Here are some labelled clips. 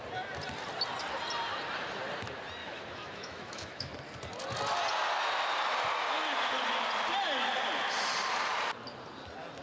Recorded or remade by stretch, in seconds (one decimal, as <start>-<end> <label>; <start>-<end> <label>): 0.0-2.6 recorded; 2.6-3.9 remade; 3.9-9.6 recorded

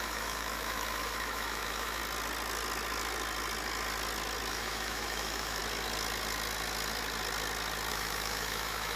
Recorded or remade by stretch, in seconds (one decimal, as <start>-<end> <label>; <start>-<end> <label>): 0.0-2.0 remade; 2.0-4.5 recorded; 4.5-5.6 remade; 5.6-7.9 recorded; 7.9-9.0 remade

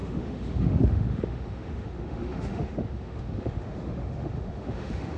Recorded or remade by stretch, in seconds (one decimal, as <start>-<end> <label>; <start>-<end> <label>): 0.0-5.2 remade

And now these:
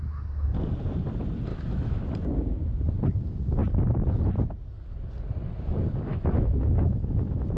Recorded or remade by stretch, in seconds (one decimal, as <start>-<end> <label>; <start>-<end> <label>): 0.0-1.5 recorded; 1.5-2.0 remade; 2.0-6.1 recorded; 6.1-7.1 remade; 7.1-7.6 recorded